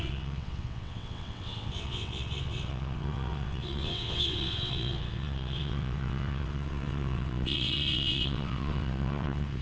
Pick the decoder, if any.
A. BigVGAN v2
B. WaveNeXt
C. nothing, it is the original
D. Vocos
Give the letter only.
B